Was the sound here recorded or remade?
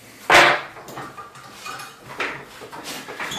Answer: recorded